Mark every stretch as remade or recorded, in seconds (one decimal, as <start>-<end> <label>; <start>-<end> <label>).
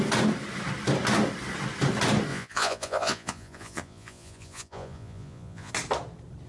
0.0-2.3 recorded; 2.3-5.7 remade; 5.7-6.5 recorded